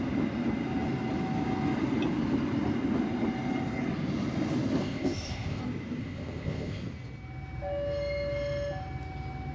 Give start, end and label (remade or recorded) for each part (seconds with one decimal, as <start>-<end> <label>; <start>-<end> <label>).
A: 0.0-4.8 recorded; 4.8-5.6 remade; 5.6-6.0 recorded; 6.0-6.8 remade; 6.8-9.5 recorded